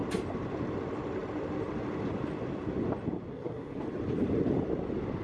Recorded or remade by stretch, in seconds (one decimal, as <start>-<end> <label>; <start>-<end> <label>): 0.0-3.3 recorded; 3.3-3.8 remade; 3.8-5.2 recorded

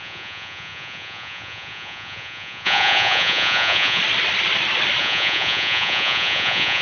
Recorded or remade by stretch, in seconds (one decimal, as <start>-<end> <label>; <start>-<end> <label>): 0.0-4.0 remade; 4.0-5.0 recorded; 5.0-6.8 remade

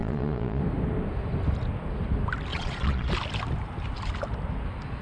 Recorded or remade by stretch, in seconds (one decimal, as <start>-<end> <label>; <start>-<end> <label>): 0.0-0.6 remade; 0.6-2.5 recorded; 2.5-3.1 remade; 3.1-5.0 recorded